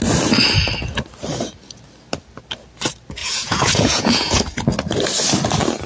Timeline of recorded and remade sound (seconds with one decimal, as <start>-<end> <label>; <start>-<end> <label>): 0.0-3.2 recorded; 3.2-4.4 remade; 4.4-5.9 recorded